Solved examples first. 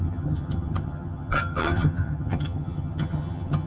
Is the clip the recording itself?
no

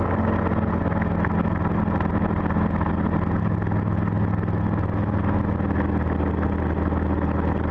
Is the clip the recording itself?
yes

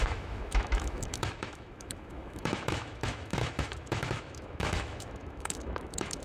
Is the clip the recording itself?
no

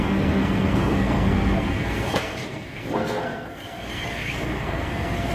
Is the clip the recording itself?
no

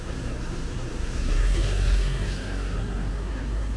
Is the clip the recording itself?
no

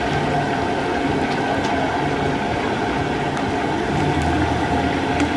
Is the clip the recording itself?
yes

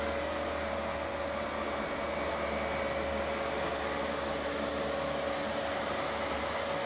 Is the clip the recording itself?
yes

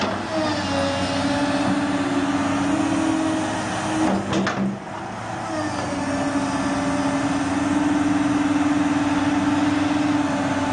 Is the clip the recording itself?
yes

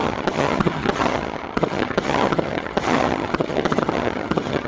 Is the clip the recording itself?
no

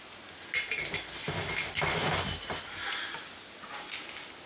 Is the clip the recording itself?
yes